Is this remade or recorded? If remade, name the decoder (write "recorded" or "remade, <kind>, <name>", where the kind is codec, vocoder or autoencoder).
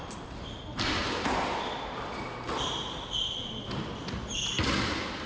recorded